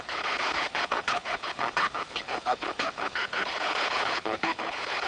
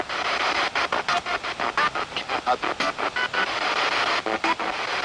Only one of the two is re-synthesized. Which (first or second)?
first